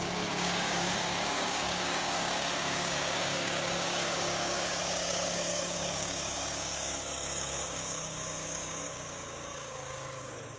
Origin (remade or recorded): remade